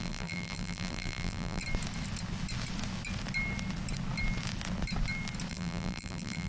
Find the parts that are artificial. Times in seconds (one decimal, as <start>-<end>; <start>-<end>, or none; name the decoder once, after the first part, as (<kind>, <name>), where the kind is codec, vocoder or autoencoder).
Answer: 0.0-1.6 (vocoder, BigVGAN v2); 5.5-6.5